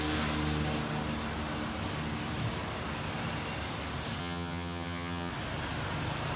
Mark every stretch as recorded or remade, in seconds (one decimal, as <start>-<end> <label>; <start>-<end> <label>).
0.0-4.2 recorded; 4.2-5.3 remade; 5.3-6.4 recorded